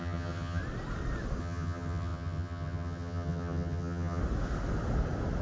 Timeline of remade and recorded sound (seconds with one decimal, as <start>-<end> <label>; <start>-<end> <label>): 0.0-0.6 remade; 0.6-1.4 recorded; 1.4-4.2 remade; 4.2-5.4 recorded

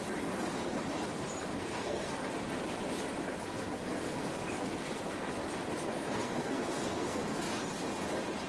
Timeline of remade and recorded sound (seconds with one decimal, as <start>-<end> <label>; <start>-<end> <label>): 0.0-1.5 recorded; 1.5-2.2 remade; 2.2-3.3 recorded; 3.3-5.3 remade; 5.3-5.8 recorded; 5.8-7.4 remade; 7.4-8.5 recorded

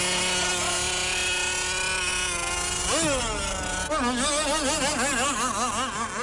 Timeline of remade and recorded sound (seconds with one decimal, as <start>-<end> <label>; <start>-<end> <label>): 0.0-6.2 recorded